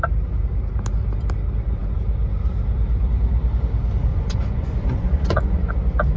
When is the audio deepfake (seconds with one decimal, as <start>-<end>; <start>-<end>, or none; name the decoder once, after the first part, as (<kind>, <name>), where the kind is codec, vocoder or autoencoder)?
4.1-5.7 (vocoder, Vocos)